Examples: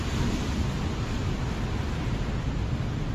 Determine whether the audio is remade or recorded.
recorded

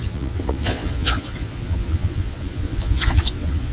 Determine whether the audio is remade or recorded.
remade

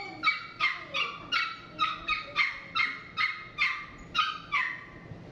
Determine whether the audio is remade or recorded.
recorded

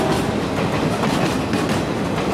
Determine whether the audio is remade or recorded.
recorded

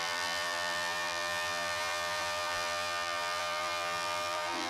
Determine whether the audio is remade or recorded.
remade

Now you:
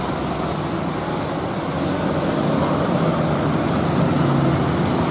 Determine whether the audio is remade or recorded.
recorded